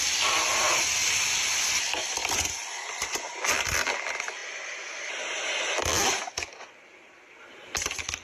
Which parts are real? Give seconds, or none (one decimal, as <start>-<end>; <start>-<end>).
0.0-8.2